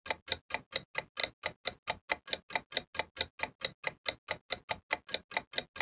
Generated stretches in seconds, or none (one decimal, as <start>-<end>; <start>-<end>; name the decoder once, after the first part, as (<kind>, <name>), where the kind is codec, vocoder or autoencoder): none